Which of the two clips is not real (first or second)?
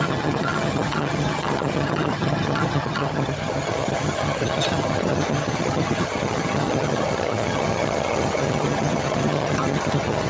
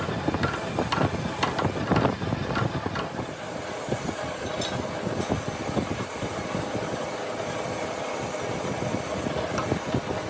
first